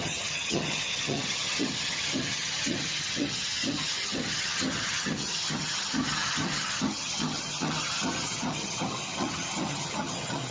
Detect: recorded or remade remade